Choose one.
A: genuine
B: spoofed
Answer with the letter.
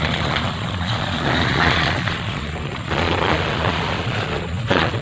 B